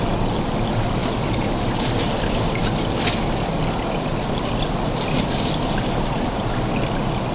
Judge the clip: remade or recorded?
recorded